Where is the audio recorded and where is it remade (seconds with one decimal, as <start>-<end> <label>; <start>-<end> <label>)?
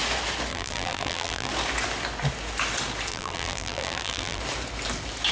0.0-0.5 recorded; 0.5-1.5 remade; 1.5-3.1 recorded; 3.1-4.4 remade; 4.4-5.3 recorded